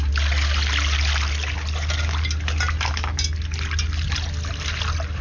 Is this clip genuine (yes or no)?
yes